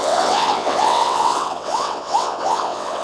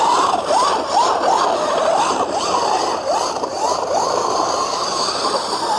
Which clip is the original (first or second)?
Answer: second